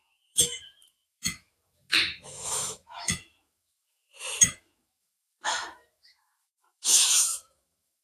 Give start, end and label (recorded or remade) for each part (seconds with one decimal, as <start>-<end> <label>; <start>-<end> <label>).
0.0-8.0 remade